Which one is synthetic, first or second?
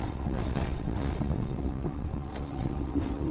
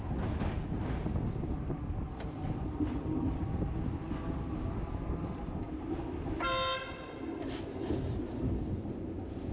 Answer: first